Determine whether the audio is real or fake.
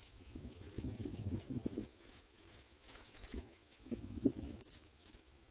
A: fake